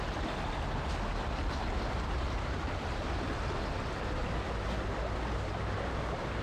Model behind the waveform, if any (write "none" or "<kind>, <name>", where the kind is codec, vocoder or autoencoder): none